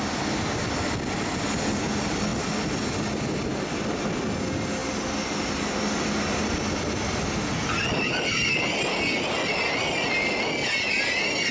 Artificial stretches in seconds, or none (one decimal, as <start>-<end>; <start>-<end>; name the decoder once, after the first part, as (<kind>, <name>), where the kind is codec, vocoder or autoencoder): none